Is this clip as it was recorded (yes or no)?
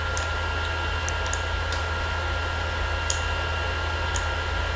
yes